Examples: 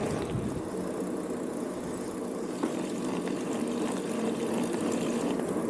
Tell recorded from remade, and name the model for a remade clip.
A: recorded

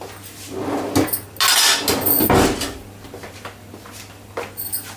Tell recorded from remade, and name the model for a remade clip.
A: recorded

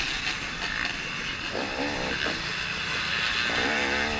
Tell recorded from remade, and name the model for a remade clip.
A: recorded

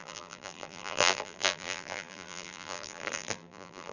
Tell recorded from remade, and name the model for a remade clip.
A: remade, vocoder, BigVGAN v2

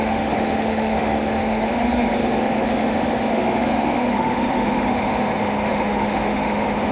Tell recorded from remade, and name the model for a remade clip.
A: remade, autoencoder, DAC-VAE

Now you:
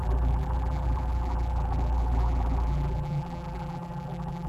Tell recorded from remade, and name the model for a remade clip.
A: remade, vocoder, BigVGAN v2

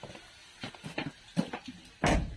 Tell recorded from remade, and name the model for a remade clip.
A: recorded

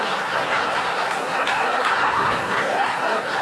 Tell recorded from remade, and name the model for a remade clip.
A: remade, codec, SNAC